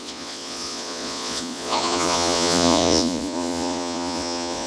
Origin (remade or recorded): remade